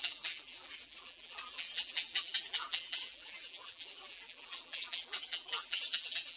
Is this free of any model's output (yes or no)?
no